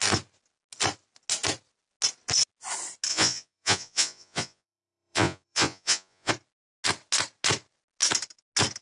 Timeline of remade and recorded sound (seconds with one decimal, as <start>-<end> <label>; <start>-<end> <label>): 0.0-3.1 recorded; 3.1-6.3 remade; 6.3-8.8 recorded